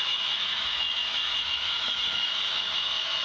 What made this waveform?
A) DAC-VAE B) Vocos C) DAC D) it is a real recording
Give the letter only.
A